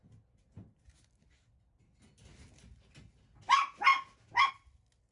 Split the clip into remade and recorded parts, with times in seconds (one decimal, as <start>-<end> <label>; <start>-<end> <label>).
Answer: 0.0-5.1 recorded